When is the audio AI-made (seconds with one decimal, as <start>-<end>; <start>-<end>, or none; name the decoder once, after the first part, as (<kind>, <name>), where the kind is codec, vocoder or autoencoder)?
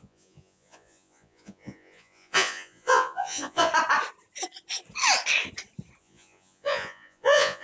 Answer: 0.0-3.7 (vocoder, Vocos); 6.0-7.6